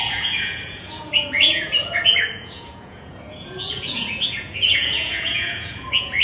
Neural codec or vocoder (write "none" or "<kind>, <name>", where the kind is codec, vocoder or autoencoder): vocoder, Vocos